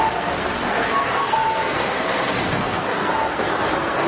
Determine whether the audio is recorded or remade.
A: remade